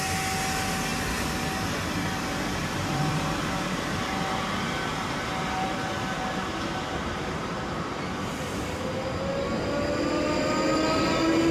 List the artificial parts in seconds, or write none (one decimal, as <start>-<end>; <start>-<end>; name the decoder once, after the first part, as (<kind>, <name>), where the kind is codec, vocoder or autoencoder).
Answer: 2.6-7.6 (vocoder, BigVGAN v2)